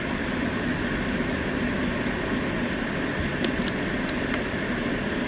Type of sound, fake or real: fake